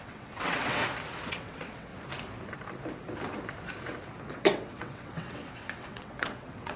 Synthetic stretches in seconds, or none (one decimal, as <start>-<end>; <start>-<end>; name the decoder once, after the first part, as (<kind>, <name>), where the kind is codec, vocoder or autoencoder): 0.0-0.8 (vocoder, WaveNeXt); 1.3-1.9; 4.3-6.8